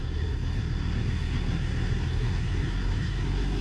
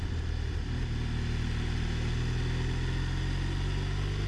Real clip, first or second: second